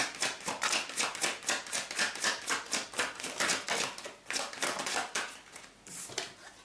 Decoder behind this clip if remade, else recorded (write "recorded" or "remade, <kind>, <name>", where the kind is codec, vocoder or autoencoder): recorded